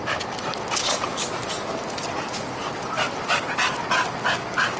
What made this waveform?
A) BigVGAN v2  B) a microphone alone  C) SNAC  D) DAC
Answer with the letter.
B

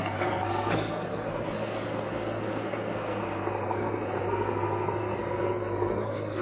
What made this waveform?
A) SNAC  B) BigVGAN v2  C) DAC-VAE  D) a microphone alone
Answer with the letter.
A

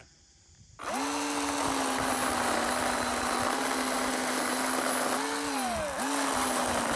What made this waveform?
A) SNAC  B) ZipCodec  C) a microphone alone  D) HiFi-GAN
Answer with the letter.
C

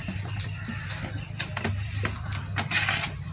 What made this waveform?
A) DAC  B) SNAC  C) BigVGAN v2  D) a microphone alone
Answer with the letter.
D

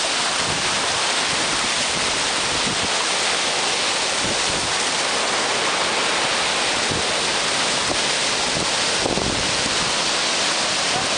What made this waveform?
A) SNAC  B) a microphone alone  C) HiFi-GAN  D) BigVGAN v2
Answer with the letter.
B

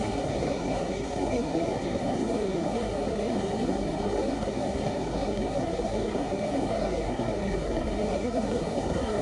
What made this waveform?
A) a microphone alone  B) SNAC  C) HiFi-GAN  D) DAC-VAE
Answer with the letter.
B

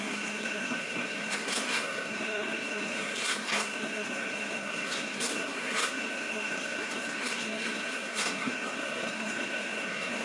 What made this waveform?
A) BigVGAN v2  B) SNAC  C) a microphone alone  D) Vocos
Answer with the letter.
B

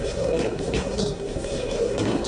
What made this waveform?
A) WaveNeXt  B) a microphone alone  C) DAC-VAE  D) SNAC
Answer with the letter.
D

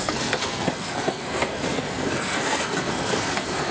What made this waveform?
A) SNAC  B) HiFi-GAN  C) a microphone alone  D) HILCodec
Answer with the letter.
A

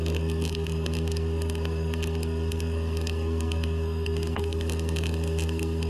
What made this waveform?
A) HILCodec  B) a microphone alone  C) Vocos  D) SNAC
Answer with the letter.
D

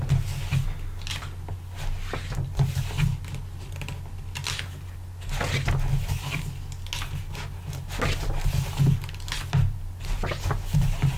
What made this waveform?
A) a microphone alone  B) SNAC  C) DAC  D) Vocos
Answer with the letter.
A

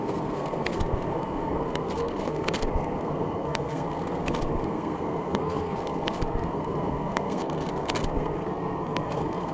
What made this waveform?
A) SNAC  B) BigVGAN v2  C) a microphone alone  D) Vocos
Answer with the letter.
A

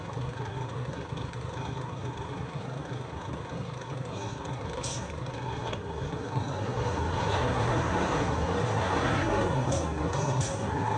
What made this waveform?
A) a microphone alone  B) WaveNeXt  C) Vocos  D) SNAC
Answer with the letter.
D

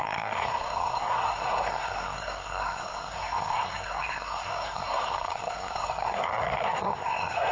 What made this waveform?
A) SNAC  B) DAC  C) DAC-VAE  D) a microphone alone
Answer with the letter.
A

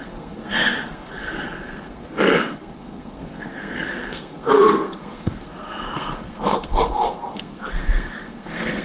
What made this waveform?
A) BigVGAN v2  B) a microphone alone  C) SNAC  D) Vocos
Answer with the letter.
C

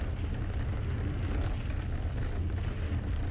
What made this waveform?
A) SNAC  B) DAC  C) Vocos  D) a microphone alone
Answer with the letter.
D